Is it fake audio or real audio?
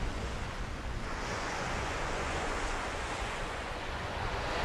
fake